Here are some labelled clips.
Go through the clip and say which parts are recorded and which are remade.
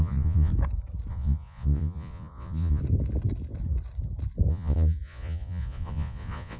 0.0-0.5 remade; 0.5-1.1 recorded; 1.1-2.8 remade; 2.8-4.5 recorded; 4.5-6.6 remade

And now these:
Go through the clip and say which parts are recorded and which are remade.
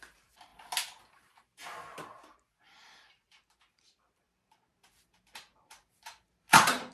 0.0-0.5 remade; 0.5-1.1 recorded; 1.1-1.6 remade; 1.6-2.6 recorded; 2.6-6.9 remade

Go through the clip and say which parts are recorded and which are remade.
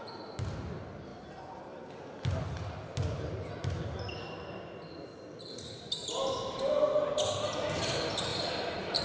0.0-8.3 recorded; 8.3-9.0 remade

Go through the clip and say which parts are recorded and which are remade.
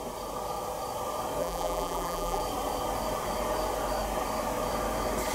0.0-1.4 recorded; 1.4-2.4 remade; 2.4-5.3 recorded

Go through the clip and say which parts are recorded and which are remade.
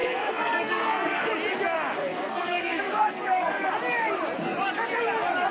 0.0-1.3 remade; 1.3-2.0 recorded; 2.0-3.7 remade; 3.7-5.5 recorded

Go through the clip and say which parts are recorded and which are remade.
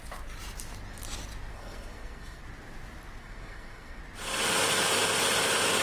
0.0-1.5 recorded; 1.5-2.4 remade; 2.4-3.2 recorded; 3.2-4.0 remade; 4.0-5.8 recorded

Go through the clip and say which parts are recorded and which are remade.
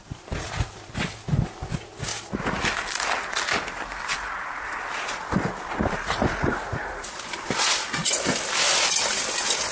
0.0-9.7 recorded